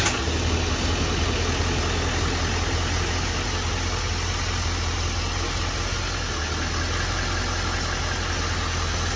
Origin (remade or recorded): recorded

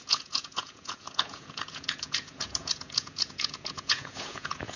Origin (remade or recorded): remade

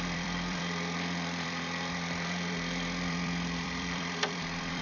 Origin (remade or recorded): remade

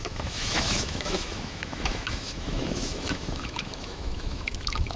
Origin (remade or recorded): remade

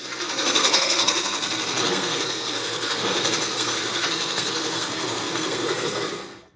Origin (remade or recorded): remade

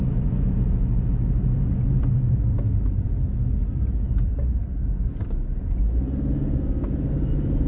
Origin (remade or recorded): recorded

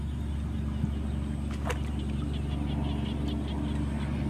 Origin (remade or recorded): recorded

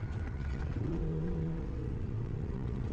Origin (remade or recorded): remade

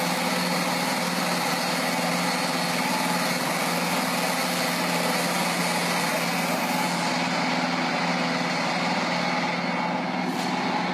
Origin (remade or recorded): recorded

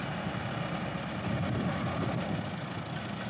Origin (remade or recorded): recorded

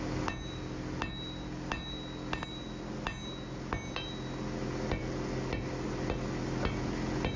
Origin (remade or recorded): recorded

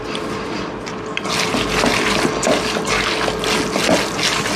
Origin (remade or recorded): recorded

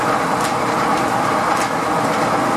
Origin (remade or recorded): recorded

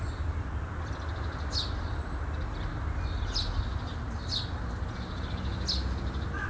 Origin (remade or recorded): recorded